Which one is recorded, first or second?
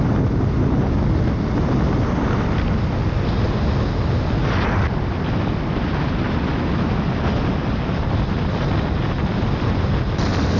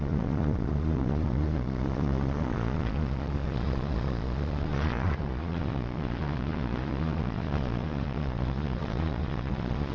first